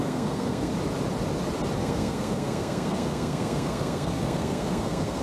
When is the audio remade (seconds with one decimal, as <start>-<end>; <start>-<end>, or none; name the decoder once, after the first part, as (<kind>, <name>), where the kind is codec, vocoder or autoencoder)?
0.0-0.7 (codec, SNAC); 1.8-5.2